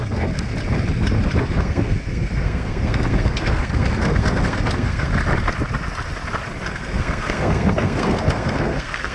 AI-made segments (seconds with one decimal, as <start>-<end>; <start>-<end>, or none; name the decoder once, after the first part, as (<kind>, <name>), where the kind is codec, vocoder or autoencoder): 0.0-0.5 (codec, SNAC); 1.4-5.1; 6.7-9.1

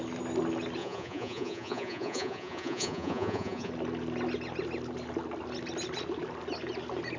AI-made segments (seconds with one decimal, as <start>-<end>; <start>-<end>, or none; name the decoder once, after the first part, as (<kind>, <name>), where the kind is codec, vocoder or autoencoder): 0.8-3.7 (vocoder, Vocos)

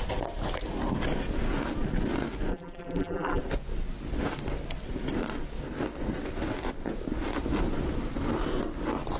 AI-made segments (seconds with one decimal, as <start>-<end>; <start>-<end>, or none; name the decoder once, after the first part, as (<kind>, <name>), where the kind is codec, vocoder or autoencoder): 2.5-3.4 (vocoder, BigVGAN v2)

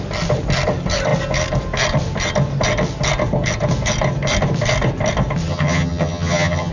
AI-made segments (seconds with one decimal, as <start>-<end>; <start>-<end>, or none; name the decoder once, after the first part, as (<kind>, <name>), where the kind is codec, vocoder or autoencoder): 5.5-6.7 (vocoder, HiFi-GAN)

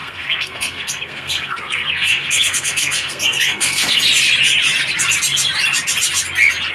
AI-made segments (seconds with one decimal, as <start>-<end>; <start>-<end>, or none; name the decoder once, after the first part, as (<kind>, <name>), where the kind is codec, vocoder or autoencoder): 0.0-4.0 (codec, SNAC)